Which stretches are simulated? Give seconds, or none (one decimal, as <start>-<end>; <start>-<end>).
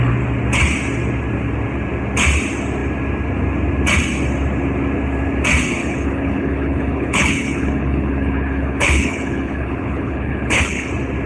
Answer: 5.8-10.9